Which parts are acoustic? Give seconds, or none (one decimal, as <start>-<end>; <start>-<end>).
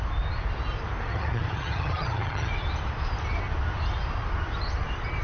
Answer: 0.0-1.1; 2.5-5.2